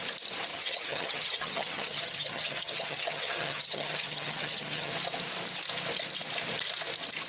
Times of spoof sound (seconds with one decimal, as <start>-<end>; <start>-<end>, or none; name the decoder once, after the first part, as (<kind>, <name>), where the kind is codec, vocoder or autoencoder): 0.5-4.9 (vocoder, HiFi-GAN)